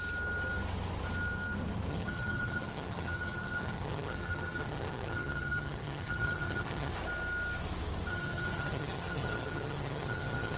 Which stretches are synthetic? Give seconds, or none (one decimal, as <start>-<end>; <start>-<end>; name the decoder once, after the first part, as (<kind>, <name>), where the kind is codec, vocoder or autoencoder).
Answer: 1.9-6.9 (vocoder, HiFi-GAN); 8.1-10.6